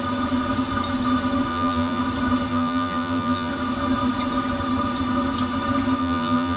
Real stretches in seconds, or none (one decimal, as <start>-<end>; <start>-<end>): 0.0-1.5; 2.0-2.5; 3.5-6.0